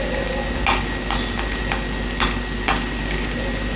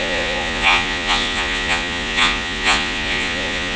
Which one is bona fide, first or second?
first